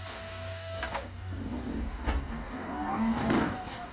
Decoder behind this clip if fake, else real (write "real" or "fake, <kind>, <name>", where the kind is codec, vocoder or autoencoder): fake, codec, DAC